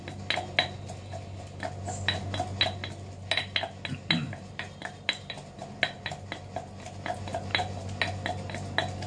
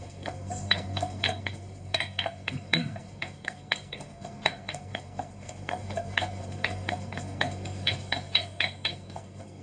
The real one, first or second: first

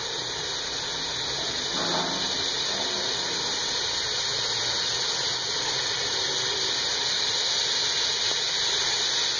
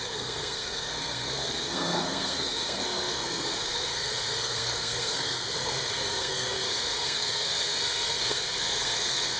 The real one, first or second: first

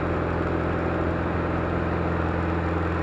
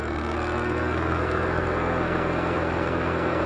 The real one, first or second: first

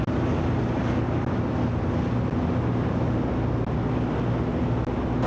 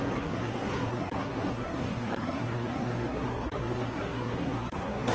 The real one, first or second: first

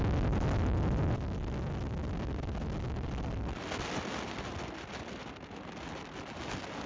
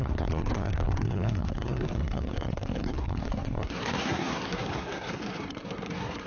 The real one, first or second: first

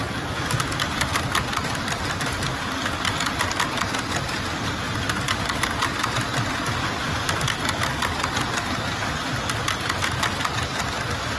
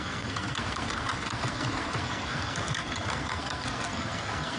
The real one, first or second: first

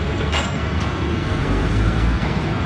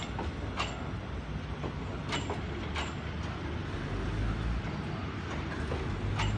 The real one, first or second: second